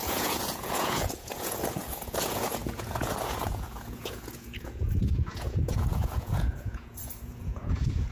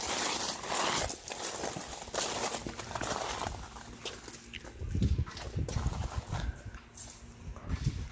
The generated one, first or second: first